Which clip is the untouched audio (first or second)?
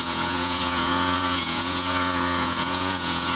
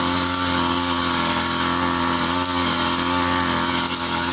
second